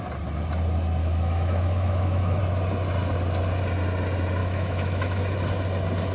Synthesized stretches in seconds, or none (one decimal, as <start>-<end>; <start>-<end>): 1.0-2.4; 4.4-5.2

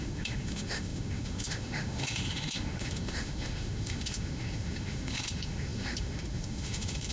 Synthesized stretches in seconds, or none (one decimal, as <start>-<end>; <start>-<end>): 0.0-7.1

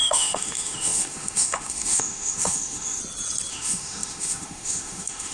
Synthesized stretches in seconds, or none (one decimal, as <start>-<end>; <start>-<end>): 0.0-3.0; 3.5-5.3